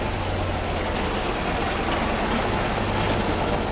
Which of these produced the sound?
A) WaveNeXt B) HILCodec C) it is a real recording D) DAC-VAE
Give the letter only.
C